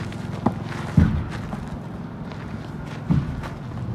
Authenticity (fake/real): real